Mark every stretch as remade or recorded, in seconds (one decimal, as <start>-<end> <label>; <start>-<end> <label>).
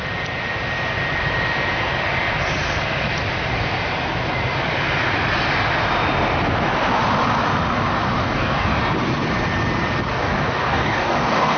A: 0.0-8.2 recorded; 8.2-8.8 remade; 8.8-10.1 recorded; 10.1-11.6 remade